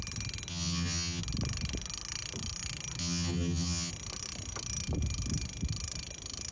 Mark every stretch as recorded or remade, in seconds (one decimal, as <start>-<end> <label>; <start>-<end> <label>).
0.0-0.5 recorded; 0.5-1.2 remade; 1.2-3.0 recorded; 3.0-3.9 remade; 3.9-6.5 recorded